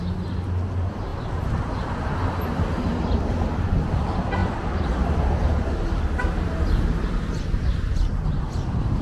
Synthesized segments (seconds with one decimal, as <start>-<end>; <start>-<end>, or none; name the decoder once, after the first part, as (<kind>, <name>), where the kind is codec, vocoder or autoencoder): none